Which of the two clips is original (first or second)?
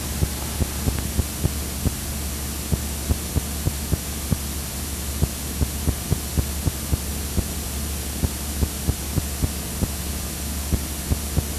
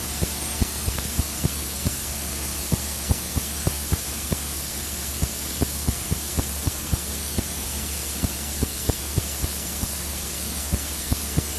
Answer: first